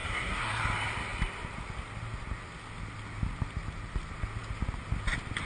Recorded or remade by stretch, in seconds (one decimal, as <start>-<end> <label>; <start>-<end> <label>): 0.0-0.6 remade; 0.6-5.5 recorded